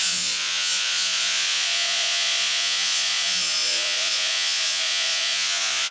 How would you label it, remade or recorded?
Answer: remade